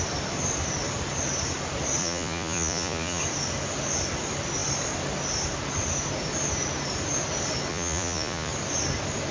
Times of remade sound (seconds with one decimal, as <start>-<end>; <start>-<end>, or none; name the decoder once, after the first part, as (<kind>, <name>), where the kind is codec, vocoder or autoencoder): 2.0-3.2 (vocoder, Vocos); 7.7-8.5